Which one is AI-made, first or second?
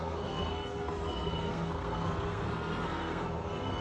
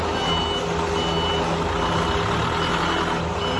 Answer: first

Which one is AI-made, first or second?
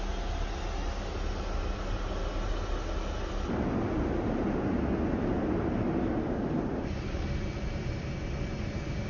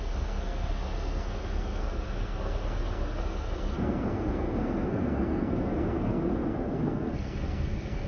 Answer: second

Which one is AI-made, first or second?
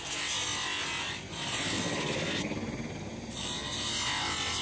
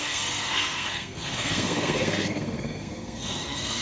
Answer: second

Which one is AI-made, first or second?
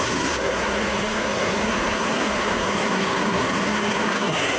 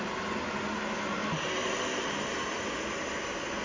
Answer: first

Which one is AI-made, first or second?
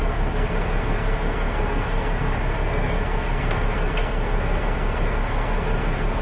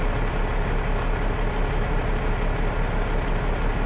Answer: first